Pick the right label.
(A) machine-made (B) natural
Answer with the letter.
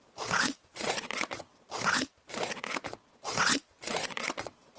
A